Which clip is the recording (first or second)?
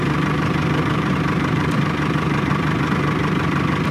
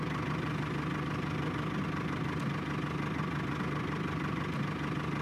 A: second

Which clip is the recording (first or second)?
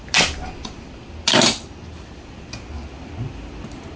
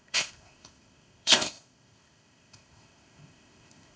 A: first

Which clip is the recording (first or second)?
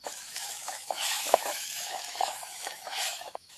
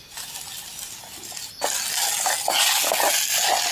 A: second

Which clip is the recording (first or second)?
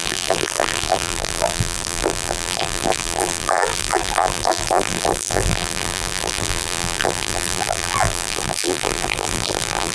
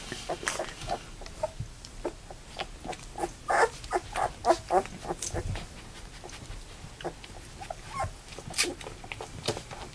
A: second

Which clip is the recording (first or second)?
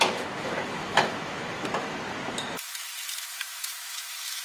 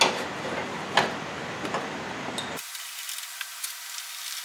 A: second